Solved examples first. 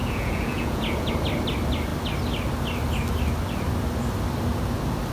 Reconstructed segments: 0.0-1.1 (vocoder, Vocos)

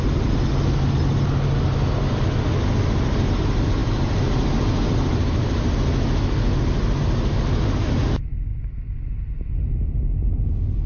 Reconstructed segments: none

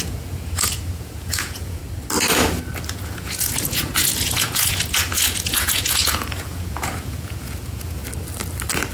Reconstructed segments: 0.0-1.8 (vocoder, Vocos); 2.9-8.0

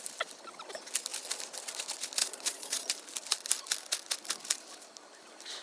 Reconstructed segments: 2.2-2.9 (vocoder, Vocos)

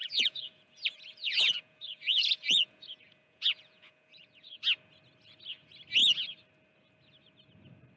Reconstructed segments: 0.0-4.6 (vocoder, Vocos)

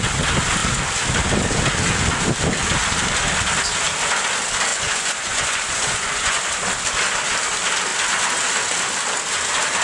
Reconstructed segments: 4.7-6.4 (vocoder, Vocos)

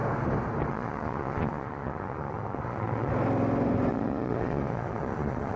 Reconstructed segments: 0.7-3.1 (vocoder, Vocos); 3.9-5.6

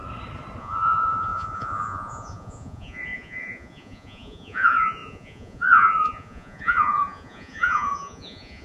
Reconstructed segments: 0.6-8.6 (vocoder, Vocos)